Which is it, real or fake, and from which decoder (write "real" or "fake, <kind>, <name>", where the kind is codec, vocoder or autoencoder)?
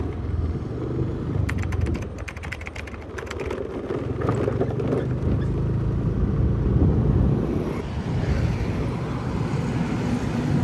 real